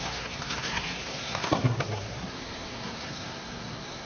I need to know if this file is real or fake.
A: fake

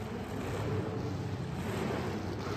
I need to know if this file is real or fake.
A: real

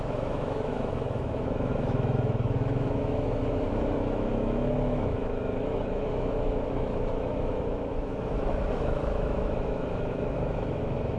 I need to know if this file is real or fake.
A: fake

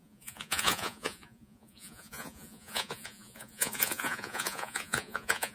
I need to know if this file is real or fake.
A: fake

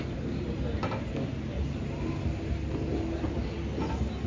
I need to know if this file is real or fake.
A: real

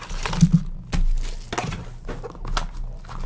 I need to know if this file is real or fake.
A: real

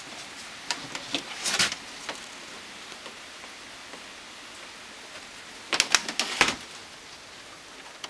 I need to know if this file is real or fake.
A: real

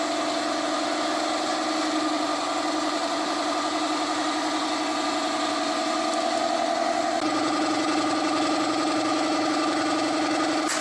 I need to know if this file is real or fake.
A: real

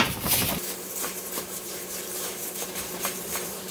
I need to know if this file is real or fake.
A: fake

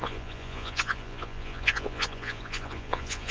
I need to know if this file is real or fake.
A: fake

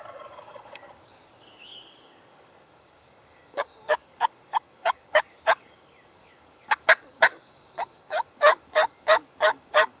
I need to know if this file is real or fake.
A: fake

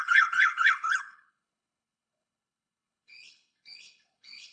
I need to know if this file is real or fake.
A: fake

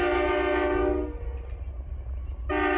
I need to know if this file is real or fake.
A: real